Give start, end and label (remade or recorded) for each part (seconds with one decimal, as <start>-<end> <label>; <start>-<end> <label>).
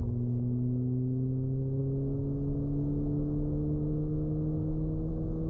0.0-5.5 recorded